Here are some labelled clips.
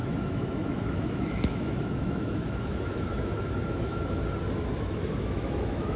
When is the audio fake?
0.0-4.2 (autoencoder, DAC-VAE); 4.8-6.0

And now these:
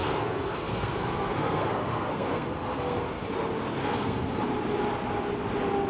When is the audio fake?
0.0-3.3 (codec, SNAC); 3.8-4.4

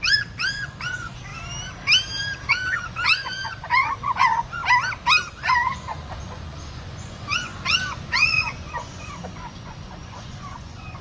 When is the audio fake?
0.0-1.3 (vocoder, Vocos); 2.5-4.6; 5.3-11.0

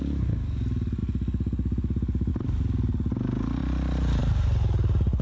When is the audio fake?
none